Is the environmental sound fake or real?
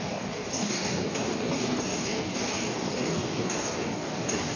fake